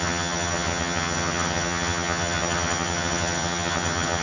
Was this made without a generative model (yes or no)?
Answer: no